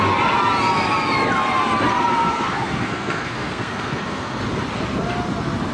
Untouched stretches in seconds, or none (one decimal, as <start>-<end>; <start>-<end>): 0.0-2.1; 4.4-5.7